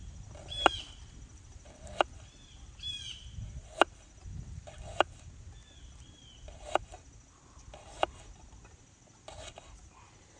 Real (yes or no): yes